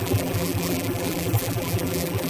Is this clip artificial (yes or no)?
yes